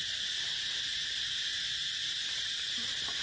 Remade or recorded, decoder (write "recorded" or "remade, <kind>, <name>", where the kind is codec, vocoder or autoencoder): remade, vocoder, BigVGAN v2